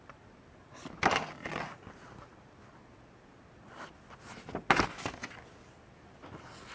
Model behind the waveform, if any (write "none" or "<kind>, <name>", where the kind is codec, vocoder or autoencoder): none